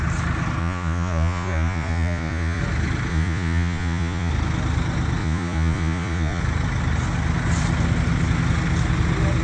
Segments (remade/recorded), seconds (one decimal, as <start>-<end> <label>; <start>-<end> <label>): 0.0-0.6 recorded; 0.6-2.6 remade; 2.6-3.1 recorded; 3.1-4.3 remade; 4.3-5.2 recorded; 5.2-6.4 remade; 6.4-9.4 recorded